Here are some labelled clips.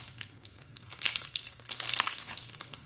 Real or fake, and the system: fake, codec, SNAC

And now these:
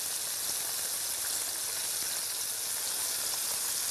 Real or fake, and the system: real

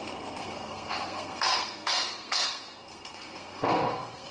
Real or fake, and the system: fake, codec, SNAC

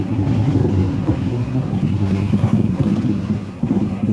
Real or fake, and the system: fake, codec, SNAC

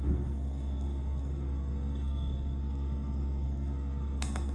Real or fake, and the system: fake, codec, SNAC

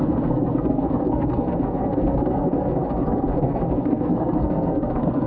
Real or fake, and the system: fake, codec, SNAC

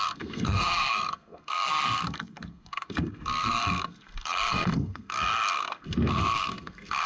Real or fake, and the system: fake, codec, SNAC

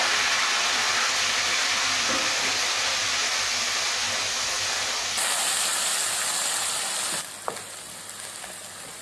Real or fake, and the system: real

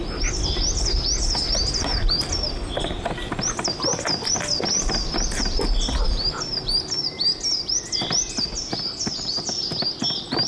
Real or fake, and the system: real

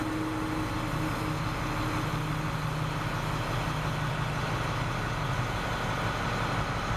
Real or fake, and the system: real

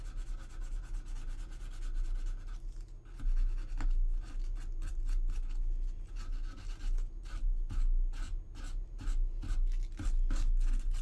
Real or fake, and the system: real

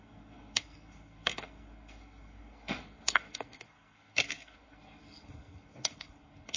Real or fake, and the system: fake, codec, SNAC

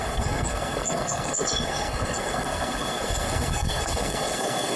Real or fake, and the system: fake, codec, SNAC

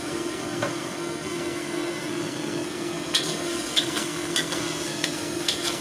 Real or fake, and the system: fake, codec, SNAC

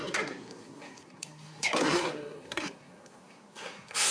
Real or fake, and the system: fake, codec, SNAC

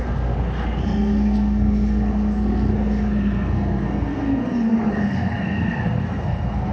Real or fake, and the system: fake, codec, SNAC